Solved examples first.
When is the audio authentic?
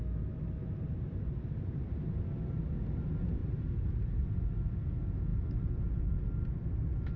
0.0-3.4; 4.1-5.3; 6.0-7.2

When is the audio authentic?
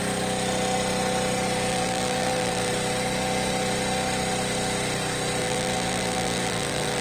0.0-1.7; 2.7-5.4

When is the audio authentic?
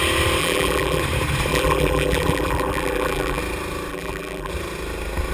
0.0-0.4; 1.0-1.5; 3.4-3.9; 4.5-5.3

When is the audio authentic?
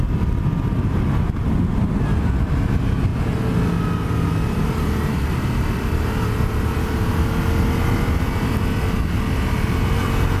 0.0-10.4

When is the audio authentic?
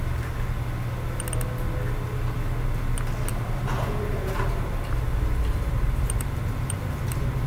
0.0-3.3; 7.0-7.5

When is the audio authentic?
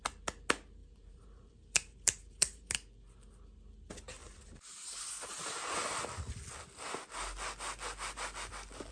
0.0-0.8; 2.7-4.2; 4.9-8.9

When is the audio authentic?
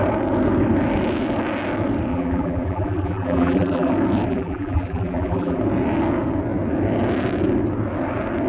0.0-2.1; 3.9-4.3; 5.6-8.5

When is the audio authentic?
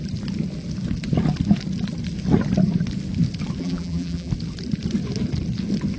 0.0-3.6; 4.3-6.0